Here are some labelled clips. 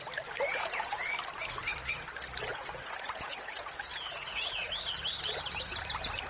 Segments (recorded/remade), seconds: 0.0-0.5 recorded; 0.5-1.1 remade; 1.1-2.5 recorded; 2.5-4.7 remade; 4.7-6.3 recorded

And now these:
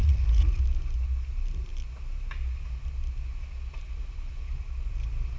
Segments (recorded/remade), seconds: 0.0-0.6 remade; 0.6-5.4 recorded

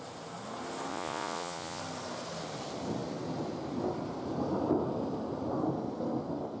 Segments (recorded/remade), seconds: 0.0-0.9 recorded; 0.9-1.8 remade; 1.8-6.6 recorded

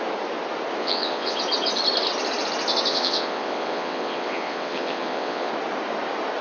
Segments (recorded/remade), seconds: 0.0-0.8 recorded; 0.8-1.4 remade; 1.4-2.9 recorded; 2.9-5.5 remade; 5.5-6.4 recorded

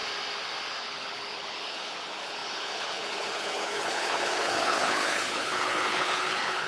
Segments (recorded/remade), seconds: 0.0-0.8 recorded; 0.8-6.7 remade

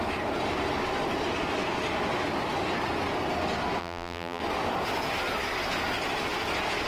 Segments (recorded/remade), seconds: 0.0-3.8 recorded; 3.8-4.4 remade; 4.4-6.9 recorded